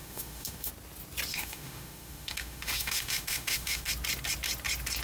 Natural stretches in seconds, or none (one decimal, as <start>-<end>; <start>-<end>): 0.7-1.3; 3.9-5.0